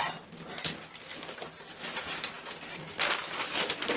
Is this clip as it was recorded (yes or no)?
yes